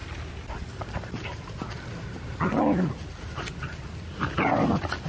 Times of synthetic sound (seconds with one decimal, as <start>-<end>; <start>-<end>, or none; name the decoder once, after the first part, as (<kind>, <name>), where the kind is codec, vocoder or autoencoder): none